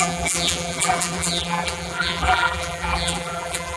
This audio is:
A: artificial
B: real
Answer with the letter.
A